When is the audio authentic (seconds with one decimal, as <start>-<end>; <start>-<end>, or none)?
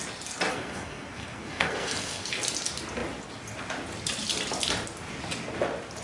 0.0-0.5; 2.3-6.0